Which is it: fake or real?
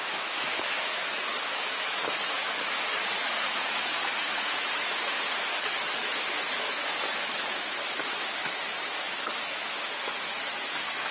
fake